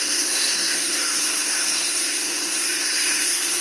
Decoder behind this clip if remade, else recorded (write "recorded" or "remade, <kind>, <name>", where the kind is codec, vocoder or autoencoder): remade, codec, SNAC